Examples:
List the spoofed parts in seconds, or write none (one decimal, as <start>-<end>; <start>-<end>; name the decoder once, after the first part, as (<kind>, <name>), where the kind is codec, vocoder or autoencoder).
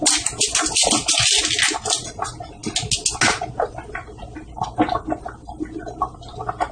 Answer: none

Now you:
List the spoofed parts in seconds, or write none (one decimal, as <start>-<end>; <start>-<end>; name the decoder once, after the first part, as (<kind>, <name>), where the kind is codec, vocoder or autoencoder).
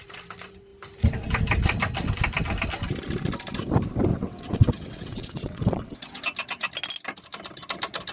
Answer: 4.1-6.2 (vocoder, WaveNeXt)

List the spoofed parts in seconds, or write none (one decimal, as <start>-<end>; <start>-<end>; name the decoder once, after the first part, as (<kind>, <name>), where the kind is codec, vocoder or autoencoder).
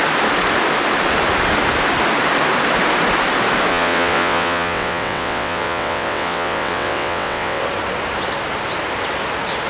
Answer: 3.7-7.6 (vocoder, WaveNeXt)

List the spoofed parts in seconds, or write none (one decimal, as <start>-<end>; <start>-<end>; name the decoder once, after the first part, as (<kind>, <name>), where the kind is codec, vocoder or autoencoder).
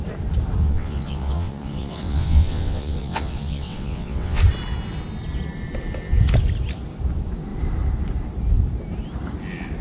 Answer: 0.6-4.4 (vocoder, WaveNeXt)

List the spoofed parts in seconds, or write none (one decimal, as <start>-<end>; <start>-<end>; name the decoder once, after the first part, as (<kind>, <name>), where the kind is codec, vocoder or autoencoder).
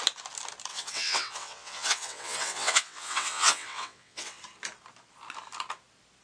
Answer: 0.7-4.4 (vocoder, WaveNeXt)